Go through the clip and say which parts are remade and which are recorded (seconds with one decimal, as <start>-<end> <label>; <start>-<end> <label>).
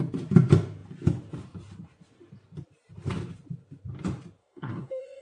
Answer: 0.0-4.4 recorded; 4.4-5.2 remade